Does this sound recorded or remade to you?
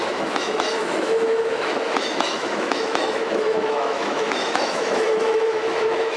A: remade